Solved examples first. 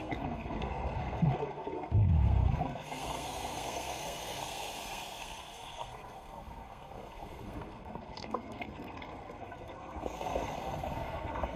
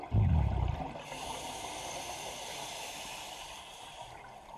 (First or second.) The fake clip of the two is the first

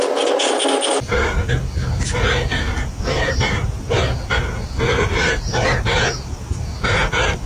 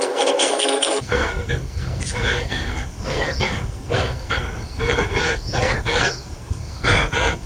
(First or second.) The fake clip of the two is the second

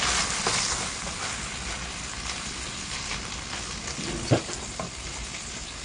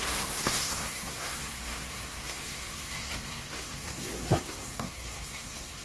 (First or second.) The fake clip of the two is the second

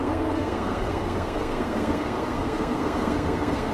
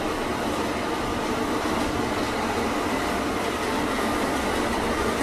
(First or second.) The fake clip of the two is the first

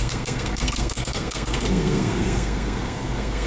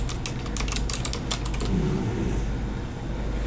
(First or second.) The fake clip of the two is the first